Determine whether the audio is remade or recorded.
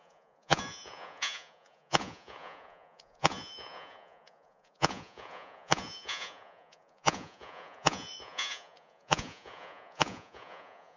remade